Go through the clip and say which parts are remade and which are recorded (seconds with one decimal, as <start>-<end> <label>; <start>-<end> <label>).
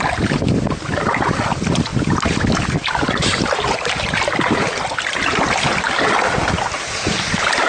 0.0-1.9 remade; 1.9-6.5 recorded; 6.5-7.7 remade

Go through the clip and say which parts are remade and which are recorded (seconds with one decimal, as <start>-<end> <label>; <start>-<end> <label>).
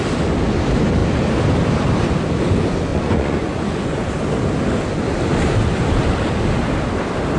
0.0-2.9 recorded; 2.9-4.1 remade; 4.1-7.4 recorded